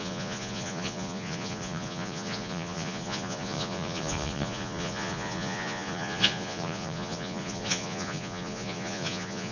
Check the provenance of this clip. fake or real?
fake